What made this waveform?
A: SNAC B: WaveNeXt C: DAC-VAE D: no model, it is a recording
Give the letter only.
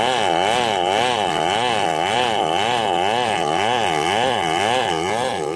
D